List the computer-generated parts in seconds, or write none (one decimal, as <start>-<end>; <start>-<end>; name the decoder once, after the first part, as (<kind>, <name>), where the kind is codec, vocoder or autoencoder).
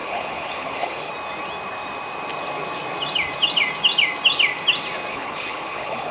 0.0-1.1 (codec, HILCodec); 5.1-6.1